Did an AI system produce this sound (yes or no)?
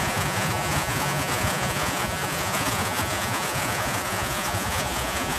yes